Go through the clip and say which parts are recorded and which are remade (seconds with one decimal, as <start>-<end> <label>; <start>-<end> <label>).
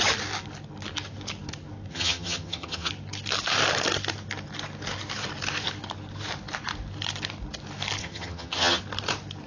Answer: 0.0-1.9 recorded; 1.9-2.9 remade; 2.9-8.0 recorded; 8.0-8.8 remade; 8.8-9.5 recorded